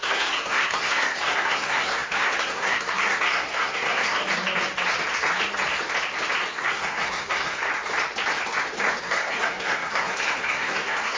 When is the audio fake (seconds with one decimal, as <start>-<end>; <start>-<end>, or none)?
0.0-4.2; 6.5-7.7; 9.0-11.2